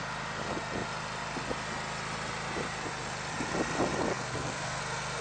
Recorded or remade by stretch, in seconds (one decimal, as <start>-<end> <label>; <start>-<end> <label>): 0.0-4.1 recorded; 4.1-4.8 remade; 4.8-5.2 recorded